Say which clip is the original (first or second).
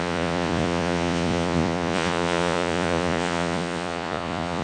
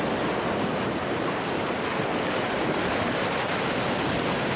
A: second